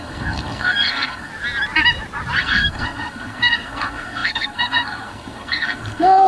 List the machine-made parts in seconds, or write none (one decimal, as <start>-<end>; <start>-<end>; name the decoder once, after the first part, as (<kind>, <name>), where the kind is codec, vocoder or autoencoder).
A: 0.0-1.3 (codec, SNAC); 2.4-6.3